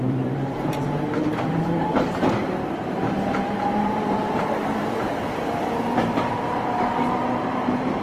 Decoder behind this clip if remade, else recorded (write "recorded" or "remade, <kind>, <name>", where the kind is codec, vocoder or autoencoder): remade, vocoder, BigVGAN v2